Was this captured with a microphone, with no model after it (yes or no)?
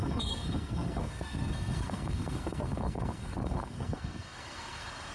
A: no